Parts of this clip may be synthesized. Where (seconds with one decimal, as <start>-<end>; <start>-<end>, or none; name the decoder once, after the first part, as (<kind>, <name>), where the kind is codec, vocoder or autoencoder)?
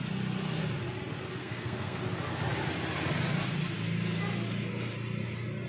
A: 1.4-2.0 (codec, SNAC)